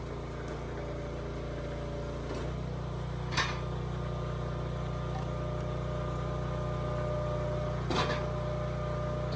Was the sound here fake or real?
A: real